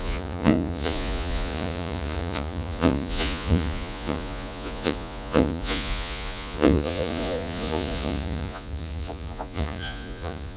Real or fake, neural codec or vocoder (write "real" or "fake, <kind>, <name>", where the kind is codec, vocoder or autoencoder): fake, vocoder, Vocos